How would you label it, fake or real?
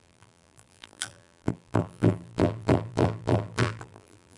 fake